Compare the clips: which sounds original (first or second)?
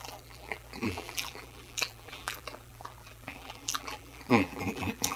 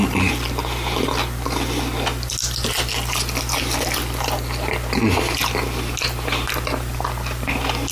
second